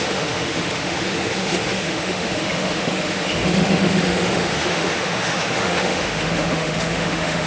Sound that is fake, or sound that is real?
fake